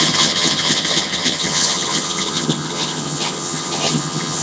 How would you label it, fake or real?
fake